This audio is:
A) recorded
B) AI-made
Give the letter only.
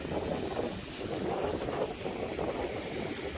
A